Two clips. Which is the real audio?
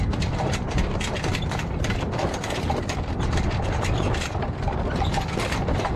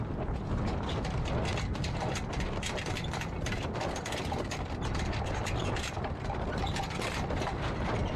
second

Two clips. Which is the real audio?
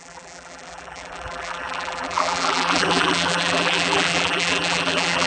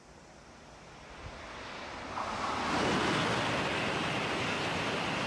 second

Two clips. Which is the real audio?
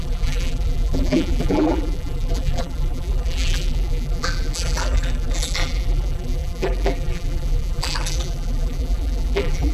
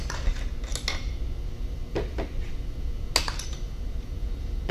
second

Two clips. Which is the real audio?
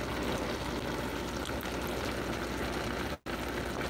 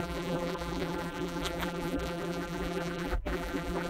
first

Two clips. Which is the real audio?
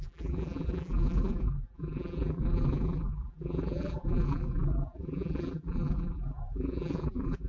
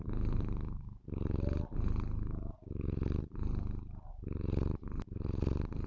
second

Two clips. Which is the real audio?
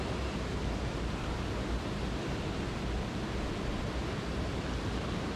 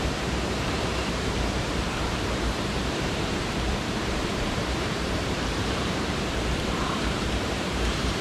first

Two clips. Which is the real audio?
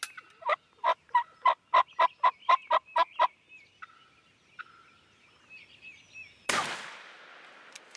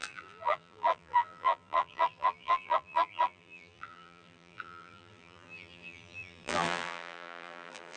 first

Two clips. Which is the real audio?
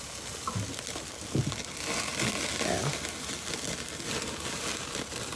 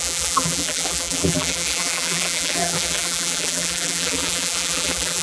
first